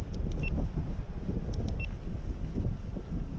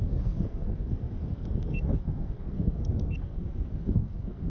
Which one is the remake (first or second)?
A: second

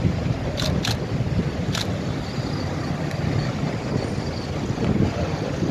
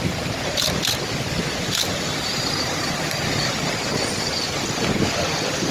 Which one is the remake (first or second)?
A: second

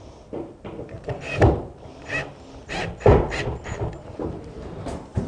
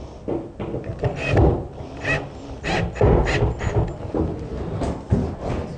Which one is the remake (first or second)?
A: first